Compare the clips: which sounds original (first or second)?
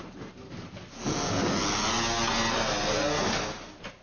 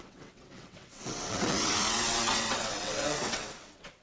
first